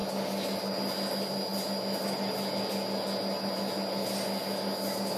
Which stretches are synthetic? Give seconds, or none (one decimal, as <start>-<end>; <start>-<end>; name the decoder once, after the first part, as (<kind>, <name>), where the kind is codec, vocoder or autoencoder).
none